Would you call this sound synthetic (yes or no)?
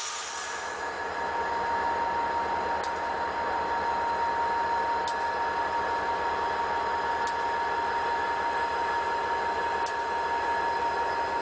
no